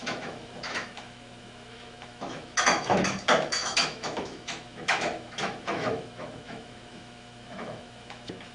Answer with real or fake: fake